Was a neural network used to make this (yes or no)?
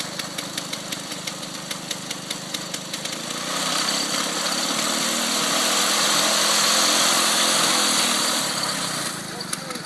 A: no